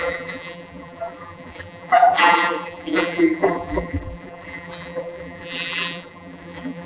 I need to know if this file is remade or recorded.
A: remade